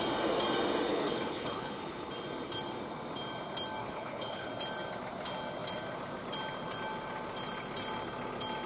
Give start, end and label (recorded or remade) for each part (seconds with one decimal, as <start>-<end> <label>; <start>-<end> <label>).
0.0-0.9 recorded; 0.9-2.1 remade; 2.1-3.8 recorded; 3.8-4.5 remade; 4.5-8.7 recorded